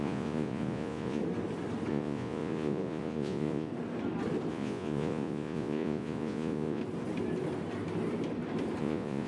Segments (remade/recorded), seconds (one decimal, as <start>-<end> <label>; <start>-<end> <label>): 0.0-1.2 remade; 1.2-1.9 recorded; 1.9-3.7 remade; 3.7-4.5 recorded; 4.5-6.8 remade; 6.8-8.8 recorded; 8.8-9.3 remade